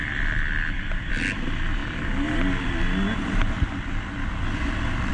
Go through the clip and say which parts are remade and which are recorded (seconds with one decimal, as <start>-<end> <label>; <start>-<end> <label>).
0.0-1.1 remade; 1.1-5.1 recorded